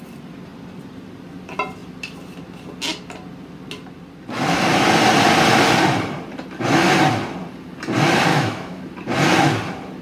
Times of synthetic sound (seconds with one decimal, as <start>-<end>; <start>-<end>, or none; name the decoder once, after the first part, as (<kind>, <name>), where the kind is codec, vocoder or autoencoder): 8.3-8.8 (autoencoder, DAC-VAE)